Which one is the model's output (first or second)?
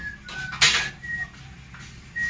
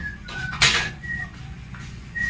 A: second